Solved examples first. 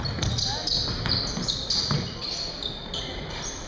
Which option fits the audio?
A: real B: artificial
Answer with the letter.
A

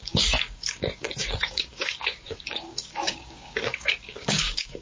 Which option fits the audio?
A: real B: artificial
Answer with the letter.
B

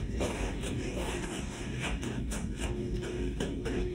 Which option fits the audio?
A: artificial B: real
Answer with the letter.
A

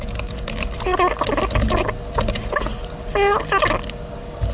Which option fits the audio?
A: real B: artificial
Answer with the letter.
A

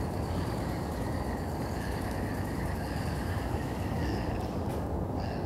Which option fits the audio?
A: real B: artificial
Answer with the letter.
B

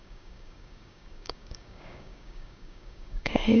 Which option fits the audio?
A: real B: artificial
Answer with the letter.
B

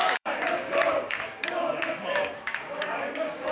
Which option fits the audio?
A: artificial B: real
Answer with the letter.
A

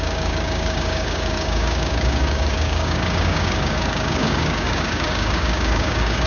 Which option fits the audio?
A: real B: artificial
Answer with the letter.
B